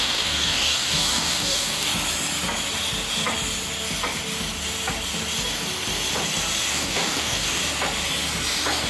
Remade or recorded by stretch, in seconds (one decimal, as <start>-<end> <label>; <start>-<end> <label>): 0.0-1.9 remade; 1.9-6.7 recorded; 6.7-7.6 remade; 7.6-8.9 recorded